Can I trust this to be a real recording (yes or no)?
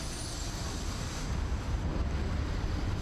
yes